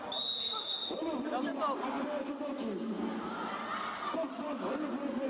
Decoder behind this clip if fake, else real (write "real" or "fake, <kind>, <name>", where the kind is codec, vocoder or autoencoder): real